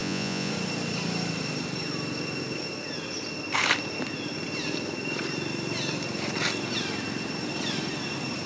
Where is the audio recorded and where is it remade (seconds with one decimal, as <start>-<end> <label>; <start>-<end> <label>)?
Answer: 0.0-0.5 remade; 0.5-8.5 recorded